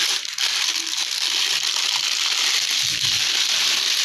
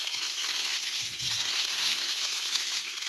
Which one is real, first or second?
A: first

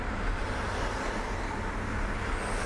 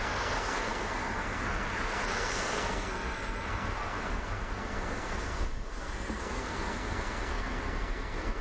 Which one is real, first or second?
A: first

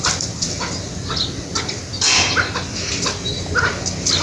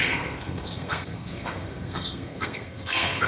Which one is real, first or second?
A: first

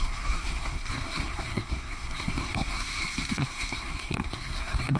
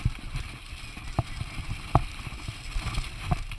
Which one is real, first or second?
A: second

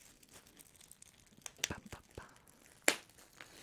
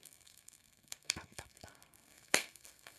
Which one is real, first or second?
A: first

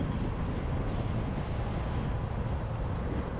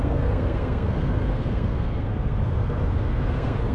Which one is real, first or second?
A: first